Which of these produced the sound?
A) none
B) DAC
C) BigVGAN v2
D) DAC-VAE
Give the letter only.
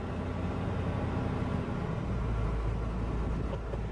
A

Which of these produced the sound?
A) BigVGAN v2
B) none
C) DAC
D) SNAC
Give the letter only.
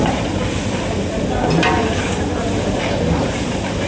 B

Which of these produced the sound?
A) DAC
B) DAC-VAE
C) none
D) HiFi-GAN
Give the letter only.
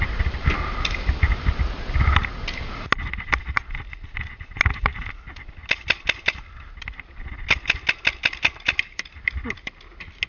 C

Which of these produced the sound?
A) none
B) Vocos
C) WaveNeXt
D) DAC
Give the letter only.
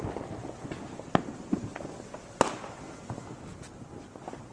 A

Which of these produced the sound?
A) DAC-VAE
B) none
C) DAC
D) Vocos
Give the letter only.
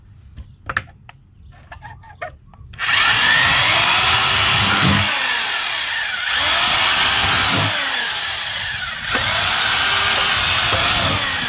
B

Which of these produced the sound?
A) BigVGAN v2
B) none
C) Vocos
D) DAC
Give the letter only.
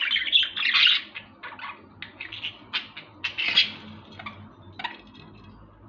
B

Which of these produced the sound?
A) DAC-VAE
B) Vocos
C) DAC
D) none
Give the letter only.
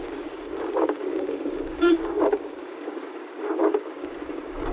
C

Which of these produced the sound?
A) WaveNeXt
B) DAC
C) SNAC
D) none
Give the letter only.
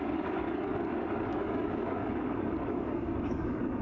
B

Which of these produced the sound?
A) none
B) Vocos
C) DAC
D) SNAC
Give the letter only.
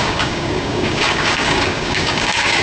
C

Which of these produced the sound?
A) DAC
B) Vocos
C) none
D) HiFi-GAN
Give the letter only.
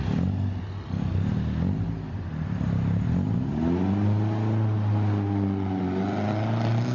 C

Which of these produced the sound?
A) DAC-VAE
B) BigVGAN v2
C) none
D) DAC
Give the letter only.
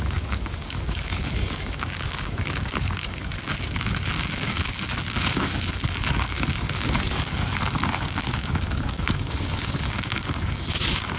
D